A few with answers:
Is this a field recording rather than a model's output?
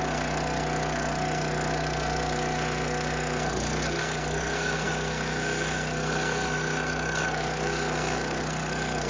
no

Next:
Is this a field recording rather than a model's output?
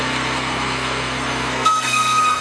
no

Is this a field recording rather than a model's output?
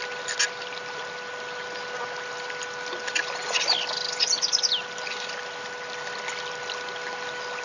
yes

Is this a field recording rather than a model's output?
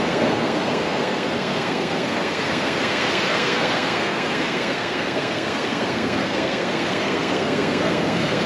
no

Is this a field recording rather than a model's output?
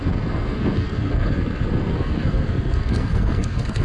no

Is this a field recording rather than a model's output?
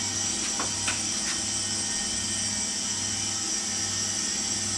yes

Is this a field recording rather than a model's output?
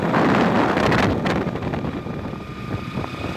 yes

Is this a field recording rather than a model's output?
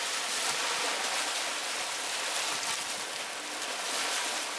yes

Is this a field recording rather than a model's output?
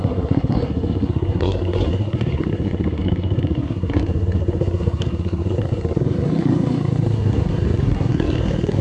no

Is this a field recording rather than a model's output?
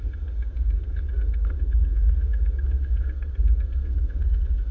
no